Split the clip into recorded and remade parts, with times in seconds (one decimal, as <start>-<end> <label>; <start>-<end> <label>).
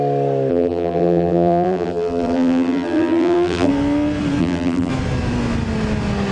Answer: 0.0-0.5 recorded; 0.5-3.7 remade; 3.7-4.4 recorded; 4.4-4.9 remade; 4.9-6.3 recorded